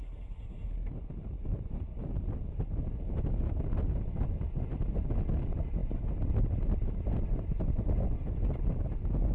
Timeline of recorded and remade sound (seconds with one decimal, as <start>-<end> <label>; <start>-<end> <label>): 0.0-9.3 recorded

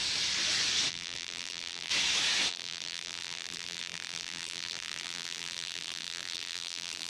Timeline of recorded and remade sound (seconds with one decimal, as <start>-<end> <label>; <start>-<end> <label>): 0.0-0.9 recorded; 0.9-1.9 remade; 1.9-2.5 recorded; 2.5-7.1 remade

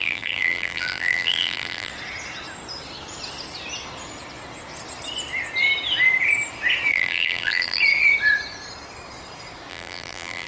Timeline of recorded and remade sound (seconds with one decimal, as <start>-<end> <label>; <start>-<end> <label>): 0.0-1.9 remade; 1.9-6.9 recorded; 6.9-7.8 remade; 7.8-9.7 recorded; 9.7-10.5 remade

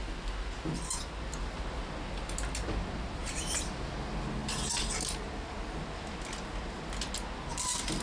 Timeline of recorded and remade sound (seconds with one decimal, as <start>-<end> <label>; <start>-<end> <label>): 0.0-3.2 recorded; 3.2-3.9 remade; 3.9-7.5 recorded; 7.5-8.0 remade

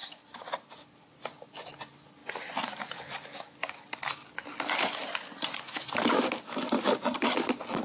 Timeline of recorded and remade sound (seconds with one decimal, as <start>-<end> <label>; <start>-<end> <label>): 0.0-2.2 recorded; 2.2-6.8 remade; 6.8-7.8 recorded

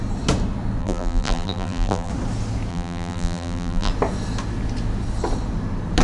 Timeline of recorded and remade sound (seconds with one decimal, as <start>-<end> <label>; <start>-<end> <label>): 0.0-0.8 recorded; 0.8-2.1 remade; 2.1-2.7 recorded; 2.7-3.9 remade; 3.9-6.0 recorded